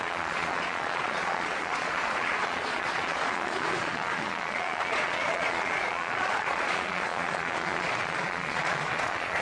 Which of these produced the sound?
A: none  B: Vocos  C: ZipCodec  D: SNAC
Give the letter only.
B